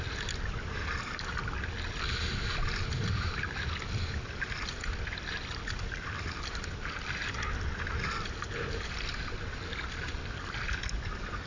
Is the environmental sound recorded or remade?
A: recorded